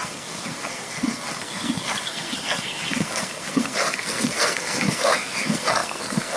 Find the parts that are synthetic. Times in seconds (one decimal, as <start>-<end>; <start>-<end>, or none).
0.0-6.4

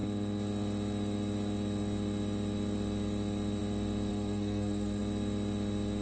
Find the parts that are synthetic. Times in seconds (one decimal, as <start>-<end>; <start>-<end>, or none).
4.1-5.0

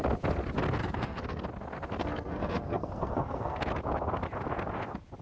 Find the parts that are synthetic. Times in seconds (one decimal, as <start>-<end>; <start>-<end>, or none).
0.8-1.4; 2.0-3.6

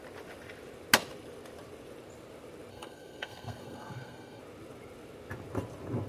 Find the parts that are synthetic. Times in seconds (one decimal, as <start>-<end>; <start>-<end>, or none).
2.7-4.4